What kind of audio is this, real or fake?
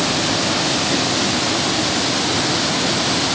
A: real